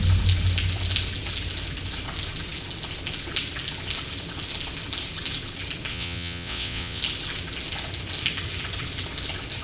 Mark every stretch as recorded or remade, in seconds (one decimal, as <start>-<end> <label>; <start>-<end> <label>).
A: 0.0-5.9 recorded; 5.9-7.0 remade; 7.0-9.6 recorded